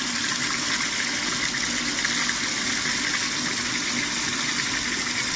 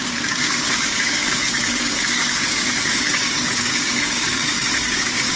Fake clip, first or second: second